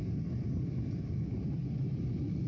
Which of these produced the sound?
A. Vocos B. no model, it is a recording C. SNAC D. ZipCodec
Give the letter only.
B